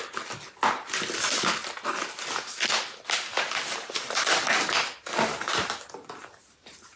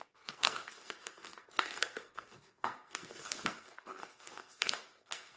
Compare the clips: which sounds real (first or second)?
first